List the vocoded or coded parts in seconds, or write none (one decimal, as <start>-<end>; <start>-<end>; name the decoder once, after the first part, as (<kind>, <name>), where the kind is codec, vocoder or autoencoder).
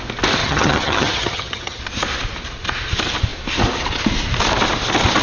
0.4-1.8 (vocoder, HiFi-GAN)